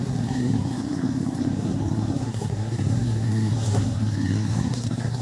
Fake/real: fake